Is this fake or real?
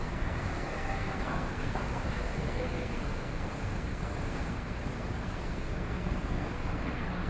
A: fake